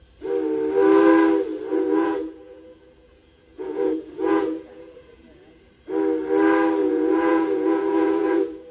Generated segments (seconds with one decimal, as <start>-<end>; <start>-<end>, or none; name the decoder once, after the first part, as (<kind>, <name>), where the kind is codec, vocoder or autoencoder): 1.7-5.7 (vocoder, Vocos); 6.8-8.7